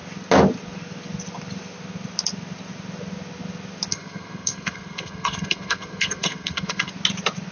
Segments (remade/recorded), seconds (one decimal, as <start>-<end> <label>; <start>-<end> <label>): 0.0-3.9 recorded; 3.9-6.9 remade; 6.9-7.5 recorded